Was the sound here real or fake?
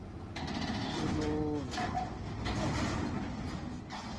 real